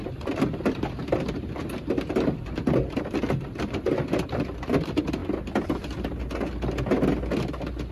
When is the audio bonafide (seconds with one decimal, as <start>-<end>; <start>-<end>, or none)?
3.9-7.9